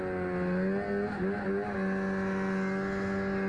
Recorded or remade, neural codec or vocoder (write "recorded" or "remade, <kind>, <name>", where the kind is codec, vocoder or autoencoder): recorded